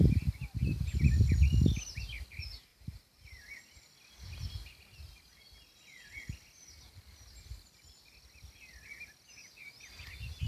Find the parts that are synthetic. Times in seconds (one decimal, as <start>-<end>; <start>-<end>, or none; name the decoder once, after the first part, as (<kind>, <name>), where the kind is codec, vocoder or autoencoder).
2.7-3.4 (vocoder, BigVGAN v2)